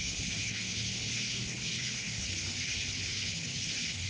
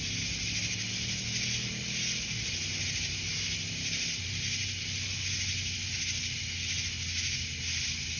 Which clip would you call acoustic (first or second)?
second